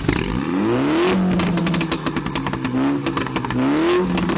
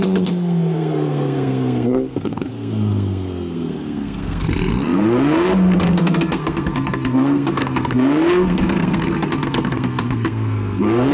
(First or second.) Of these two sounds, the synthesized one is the second